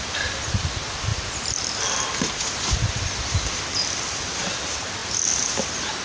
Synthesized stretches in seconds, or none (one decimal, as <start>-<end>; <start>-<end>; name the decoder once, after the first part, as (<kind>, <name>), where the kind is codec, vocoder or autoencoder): 1.1-4.3 (vocoder, BigVGAN v2)